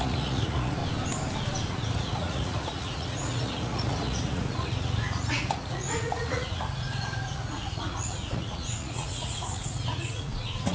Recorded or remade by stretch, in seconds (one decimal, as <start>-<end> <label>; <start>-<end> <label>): 0.0-0.8 remade; 0.8-1.7 recorded; 1.7-10.7 remade